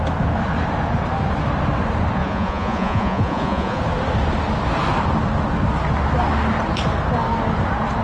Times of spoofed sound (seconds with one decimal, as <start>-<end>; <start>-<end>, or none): 2.2-3.8